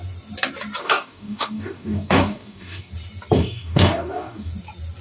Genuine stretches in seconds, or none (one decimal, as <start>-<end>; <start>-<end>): 0.0-0.8; 2.9-3.4; 4.5-5.0